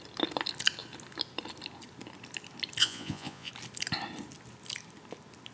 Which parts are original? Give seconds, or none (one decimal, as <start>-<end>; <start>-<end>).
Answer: 0.0-2.8; 3.5-5.5